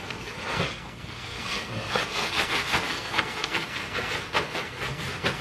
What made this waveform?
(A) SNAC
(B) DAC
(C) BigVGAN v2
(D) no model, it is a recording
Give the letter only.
A